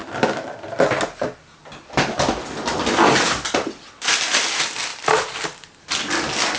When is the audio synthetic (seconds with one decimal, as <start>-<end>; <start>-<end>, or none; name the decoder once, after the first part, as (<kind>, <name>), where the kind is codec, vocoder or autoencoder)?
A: none